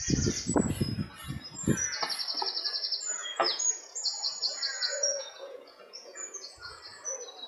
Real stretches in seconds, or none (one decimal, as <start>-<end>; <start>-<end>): 0.0-3.2; 6.8-7.5